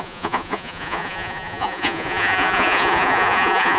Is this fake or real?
fake